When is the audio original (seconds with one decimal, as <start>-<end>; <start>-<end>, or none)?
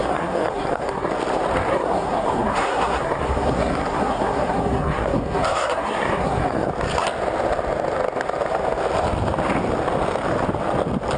1.1-1.7; 6.7-11.2